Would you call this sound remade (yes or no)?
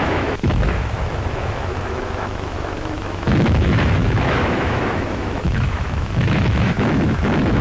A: yes